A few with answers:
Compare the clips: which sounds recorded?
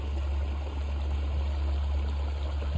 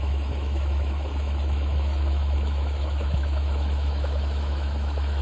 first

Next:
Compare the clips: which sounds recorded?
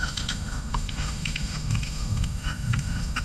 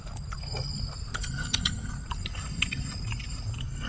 second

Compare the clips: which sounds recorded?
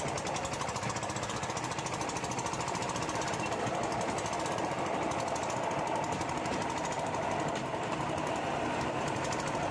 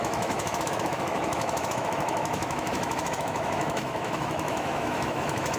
first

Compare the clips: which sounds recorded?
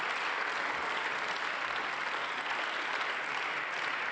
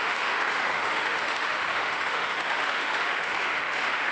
first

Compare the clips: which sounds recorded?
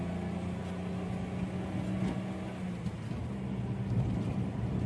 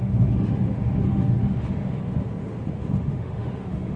first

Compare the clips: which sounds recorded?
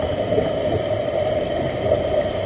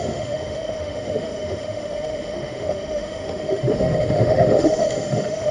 first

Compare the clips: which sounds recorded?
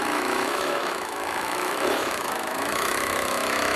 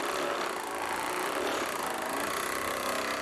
second